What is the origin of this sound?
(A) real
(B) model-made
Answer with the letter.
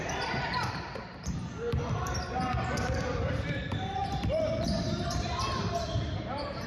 B